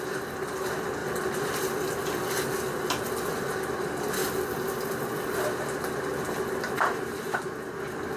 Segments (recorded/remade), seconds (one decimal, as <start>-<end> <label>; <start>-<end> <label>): 0.0-8.2 recorded